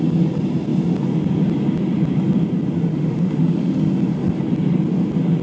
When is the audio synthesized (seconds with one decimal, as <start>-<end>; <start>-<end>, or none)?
2.9-3.9